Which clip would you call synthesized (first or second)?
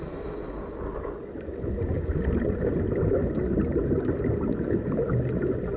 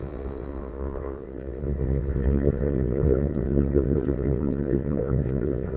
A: second